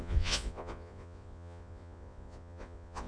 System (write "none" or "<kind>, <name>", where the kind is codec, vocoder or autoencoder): vocoder, Vocos